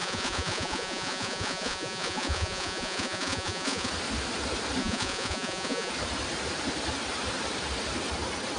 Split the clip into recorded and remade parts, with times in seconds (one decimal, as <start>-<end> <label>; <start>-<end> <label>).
0.0-3.9 remade; 3.9-4.8 recorded; 4.8-5.9 remade; 5.9-8.6 recorded

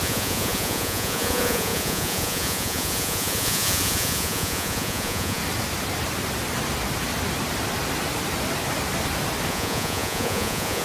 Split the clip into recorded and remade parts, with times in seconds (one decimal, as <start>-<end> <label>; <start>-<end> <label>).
0.0-5.4 remade; 5.4-9.5 recorded; 9.5-10.8 remade

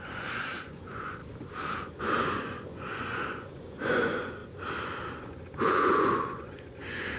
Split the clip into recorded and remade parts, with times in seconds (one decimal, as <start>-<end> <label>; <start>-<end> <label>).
0.0-1.2 remade; 1.2-2.0 recorded; 2.0-4.4 remade; 4.4-5.2 recorded; 5.2-7.2 remade